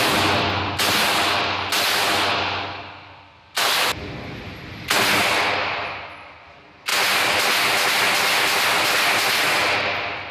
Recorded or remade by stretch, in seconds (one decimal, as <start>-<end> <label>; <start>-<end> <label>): 0.0-10.3 recorded